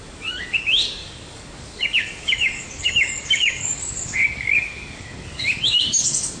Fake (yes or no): yes